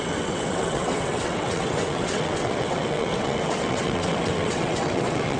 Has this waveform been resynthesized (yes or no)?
yes